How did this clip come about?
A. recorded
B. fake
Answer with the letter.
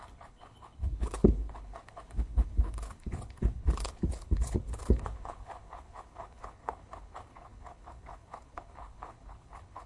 B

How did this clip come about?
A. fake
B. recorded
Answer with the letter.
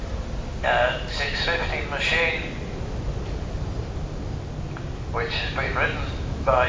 B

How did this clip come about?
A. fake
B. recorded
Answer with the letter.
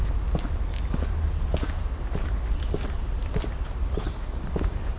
B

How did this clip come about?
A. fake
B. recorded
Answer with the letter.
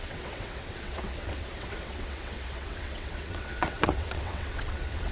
A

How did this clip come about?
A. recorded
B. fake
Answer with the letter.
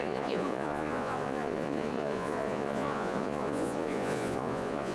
B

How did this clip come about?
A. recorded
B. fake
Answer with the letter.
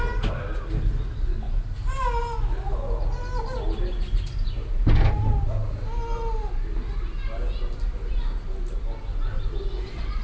A